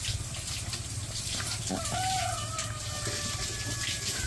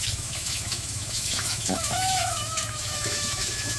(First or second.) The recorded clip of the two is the first